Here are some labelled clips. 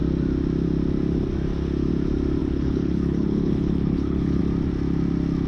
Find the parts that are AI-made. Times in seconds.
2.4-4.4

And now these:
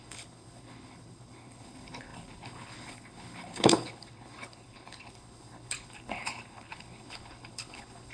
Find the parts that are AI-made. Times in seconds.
0.0-8.1